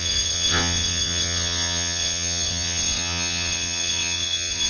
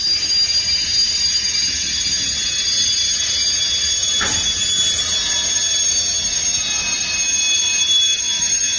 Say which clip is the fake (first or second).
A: first